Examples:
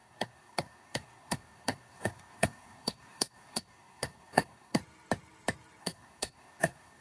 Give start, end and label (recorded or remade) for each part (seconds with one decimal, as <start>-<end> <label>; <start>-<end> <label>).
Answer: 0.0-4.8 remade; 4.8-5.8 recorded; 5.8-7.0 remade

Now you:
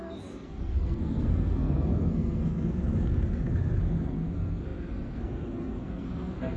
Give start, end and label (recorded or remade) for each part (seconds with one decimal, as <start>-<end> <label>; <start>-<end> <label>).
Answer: 0.0-6.6 remade

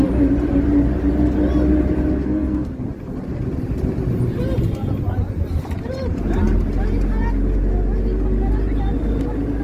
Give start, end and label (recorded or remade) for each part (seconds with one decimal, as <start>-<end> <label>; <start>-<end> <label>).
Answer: 0.0-2.2 recorded; 2.2-2.8 remade; 2.8-9.6 recorded

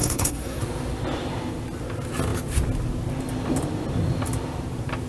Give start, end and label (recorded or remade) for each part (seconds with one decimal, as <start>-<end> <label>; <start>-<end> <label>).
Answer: 0.0-0.6 remade; 0.6-5.1 recorded